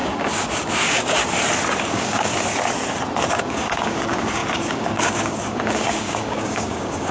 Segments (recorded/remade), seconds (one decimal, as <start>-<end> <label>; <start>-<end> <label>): 0.0-1.2 remade; 1.2-1.8 recorded; 1.8-2.3 remade; 2.3-3.3 recorded; 3.3-7.1 remade